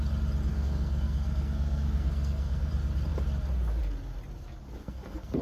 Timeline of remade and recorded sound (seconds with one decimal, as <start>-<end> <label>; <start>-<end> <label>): 0.0-0.5 recorded; 0.5-2.7 remade; 2.7-4.8 recorded; 4.8-5.4 remade